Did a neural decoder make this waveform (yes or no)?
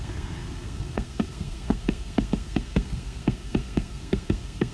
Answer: yes